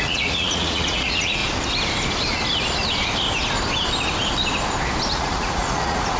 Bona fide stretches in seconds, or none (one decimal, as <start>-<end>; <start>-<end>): 1.4-5.1